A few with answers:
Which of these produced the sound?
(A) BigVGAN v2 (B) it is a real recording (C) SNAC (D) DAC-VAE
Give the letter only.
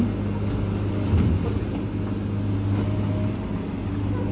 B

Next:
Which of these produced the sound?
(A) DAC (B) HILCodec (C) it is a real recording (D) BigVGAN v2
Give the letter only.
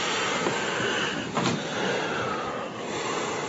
C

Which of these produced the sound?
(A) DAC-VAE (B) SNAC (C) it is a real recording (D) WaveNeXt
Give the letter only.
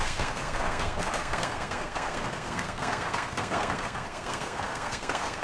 B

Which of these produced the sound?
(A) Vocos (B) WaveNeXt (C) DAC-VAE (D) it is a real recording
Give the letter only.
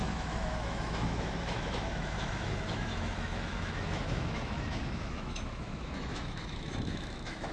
C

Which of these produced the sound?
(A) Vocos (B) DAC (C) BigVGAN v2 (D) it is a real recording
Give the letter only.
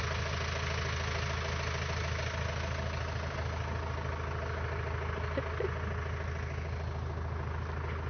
D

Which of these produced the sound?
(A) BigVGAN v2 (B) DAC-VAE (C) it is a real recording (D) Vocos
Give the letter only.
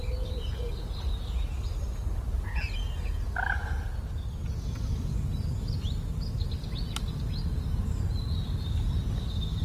C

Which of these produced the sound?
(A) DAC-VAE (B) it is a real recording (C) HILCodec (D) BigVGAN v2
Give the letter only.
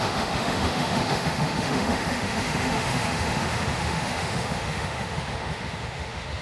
A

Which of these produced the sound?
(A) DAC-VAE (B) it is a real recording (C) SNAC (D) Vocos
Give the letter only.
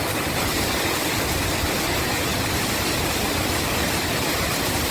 B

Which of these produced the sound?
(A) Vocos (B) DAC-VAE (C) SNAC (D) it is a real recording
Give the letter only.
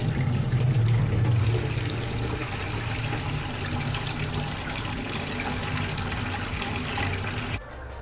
D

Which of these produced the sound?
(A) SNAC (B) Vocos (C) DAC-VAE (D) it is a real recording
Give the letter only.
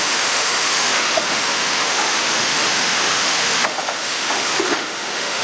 C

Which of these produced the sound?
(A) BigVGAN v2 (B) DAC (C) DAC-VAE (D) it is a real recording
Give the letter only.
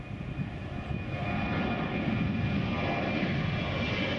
D